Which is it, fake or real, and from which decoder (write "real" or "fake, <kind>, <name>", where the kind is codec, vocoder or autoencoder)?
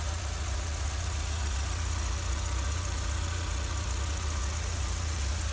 fake, vocoder, Vocos